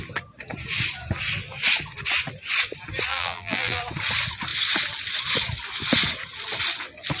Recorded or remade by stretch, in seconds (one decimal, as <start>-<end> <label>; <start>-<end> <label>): 0.0-3.1 recorded; 3.1-3.8 remade; 3.8-7.2 recorded